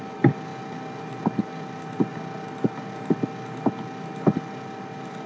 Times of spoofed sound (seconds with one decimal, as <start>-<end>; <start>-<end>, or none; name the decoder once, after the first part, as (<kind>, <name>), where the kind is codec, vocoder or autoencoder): none